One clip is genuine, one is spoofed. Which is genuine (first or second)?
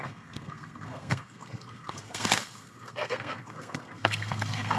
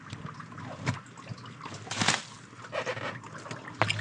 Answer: second